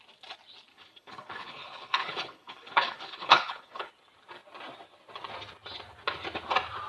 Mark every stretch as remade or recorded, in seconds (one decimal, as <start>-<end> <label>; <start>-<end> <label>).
0.0-0.7 recorded; 0.7-3.9 remade; 3.9-6.9 recorded

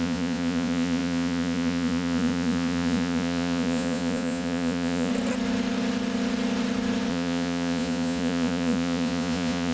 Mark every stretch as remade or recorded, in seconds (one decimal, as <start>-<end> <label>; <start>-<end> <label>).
0.0-5.1 remade; 5.1-7.1 recorded; 7.1-9.7 remade

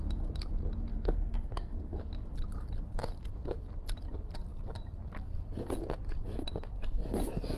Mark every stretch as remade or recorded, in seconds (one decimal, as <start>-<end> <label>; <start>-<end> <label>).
0.0-0.9 recorded; 0.9-2.0 remade; 2.0-7.6 recorded